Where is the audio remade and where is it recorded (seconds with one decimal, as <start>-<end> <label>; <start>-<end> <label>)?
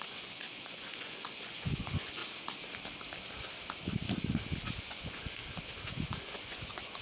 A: 0.0-2.2 remade; 2.2-4.8 recorded; 4.8-5.4 remade; 5.4-5.9 recorded; 5.9-7.0 remade